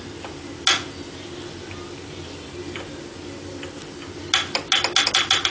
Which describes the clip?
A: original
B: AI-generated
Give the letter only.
A